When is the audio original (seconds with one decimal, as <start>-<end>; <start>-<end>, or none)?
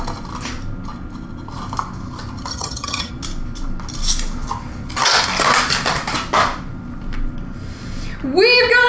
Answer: 0.0-2.5; 3.1-8.9